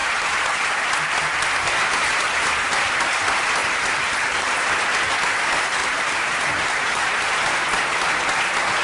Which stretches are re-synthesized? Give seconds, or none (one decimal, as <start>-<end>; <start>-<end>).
0.0-0.7; 3.6-4.7; 5.8-7.3